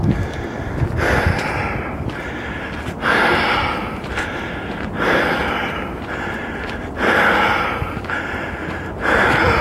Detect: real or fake real